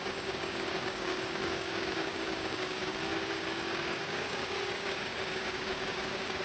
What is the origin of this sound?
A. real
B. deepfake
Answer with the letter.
B